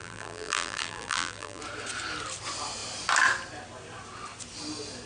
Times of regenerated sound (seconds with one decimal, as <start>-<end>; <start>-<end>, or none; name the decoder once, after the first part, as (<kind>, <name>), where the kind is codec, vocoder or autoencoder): 0.0-1.6 (vocoder, BigVGAN v2)